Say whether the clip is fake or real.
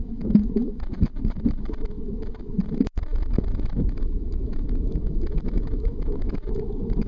fake